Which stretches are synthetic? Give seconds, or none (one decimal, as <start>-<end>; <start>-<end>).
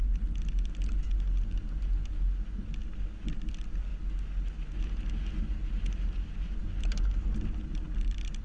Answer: none